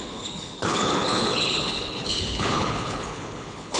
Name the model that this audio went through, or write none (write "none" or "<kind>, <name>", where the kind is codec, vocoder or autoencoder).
codec, HILCodec